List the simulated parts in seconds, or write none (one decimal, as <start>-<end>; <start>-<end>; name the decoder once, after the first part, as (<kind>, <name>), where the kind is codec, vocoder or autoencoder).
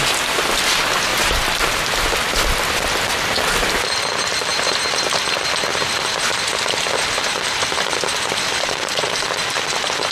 1.1-1.8 (vocoder, BigVGAN v2); 4.5-5.2; 5.7-8.2